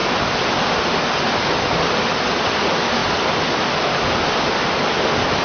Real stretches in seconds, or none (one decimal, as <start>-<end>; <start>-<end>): 0.0-5.4